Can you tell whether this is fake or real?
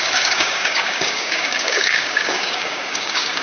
fake